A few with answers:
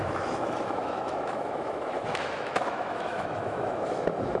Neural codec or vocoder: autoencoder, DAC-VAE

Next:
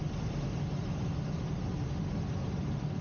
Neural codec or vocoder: none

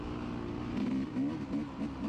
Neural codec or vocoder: none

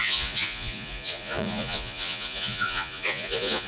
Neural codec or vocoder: vocoder, Vocos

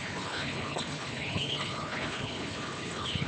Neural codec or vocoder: codec, HILCodec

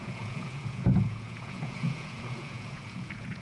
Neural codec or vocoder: vocoder, Vocos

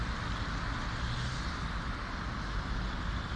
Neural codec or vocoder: none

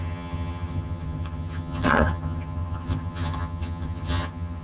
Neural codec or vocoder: vocoder, HiFi-GAN